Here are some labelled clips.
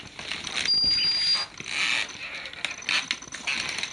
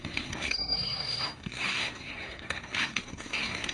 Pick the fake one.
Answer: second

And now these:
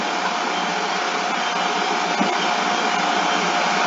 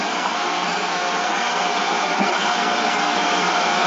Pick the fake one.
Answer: second